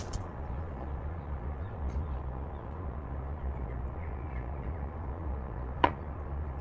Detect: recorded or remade remade